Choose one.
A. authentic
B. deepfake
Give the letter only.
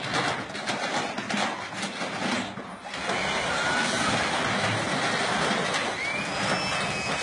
A